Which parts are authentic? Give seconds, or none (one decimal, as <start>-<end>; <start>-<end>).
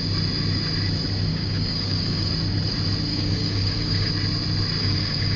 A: 0.0-1.3; 2.3-3.1; 4.1-4.8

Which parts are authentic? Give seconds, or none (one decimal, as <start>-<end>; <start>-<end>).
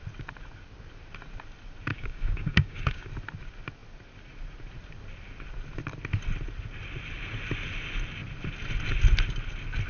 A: 0.0-1.9; 3.1-9.9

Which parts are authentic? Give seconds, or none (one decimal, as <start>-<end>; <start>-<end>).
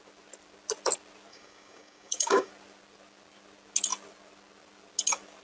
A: 0.0-1.3; 2.5-5.4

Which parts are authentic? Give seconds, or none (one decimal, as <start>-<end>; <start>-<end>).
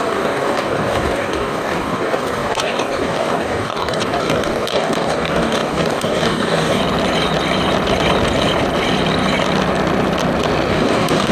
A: 6.8-10.7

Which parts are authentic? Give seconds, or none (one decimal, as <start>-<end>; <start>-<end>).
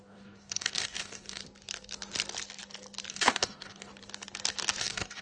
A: 1.4-3.1; 3.9-4.8